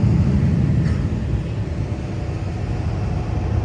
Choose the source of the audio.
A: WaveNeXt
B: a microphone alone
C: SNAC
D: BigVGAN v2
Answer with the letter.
B